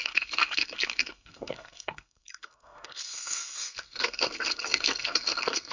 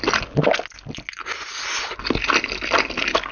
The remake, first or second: first